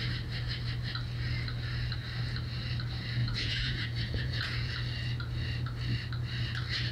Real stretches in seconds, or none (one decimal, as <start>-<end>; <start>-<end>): 0.0-3.2; 4.7-6.9